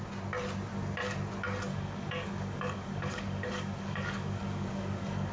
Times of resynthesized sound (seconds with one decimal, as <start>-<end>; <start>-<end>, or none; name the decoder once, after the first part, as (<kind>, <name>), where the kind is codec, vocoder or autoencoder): 1.7-5.3 (codec, DAC)